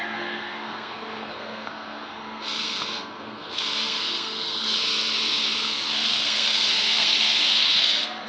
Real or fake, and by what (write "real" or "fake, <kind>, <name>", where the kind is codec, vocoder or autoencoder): fake, codec, SNAC